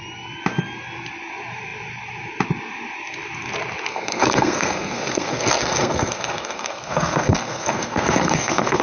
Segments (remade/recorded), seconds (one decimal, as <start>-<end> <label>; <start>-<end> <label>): 0.0-3.9 recorded; 3.9-8.8 remade